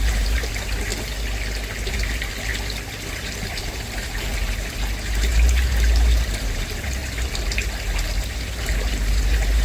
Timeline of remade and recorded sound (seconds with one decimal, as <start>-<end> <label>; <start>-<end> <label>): 0.0-0.9 remade; 0.9-1.9 recorded; 1.9-2.5 remade; 2.5-3.1 recorded; 3.1-7.0 remade; 7.0-8.6 recorded; 8.6-9.6 remade